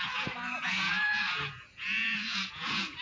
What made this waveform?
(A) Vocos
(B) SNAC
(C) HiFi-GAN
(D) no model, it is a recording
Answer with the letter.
A